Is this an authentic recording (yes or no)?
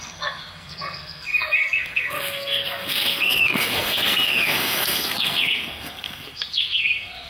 no